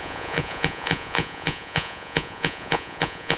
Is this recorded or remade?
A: remade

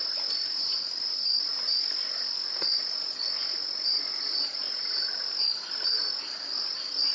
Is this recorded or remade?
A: recorded